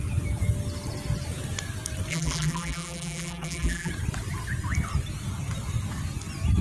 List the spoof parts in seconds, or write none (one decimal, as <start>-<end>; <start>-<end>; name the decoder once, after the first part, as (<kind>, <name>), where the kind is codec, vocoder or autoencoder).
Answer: 2.1-3.9 (vocoder, BigVGAN v2)